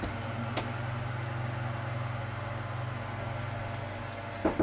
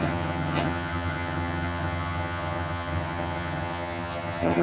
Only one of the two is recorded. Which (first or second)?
first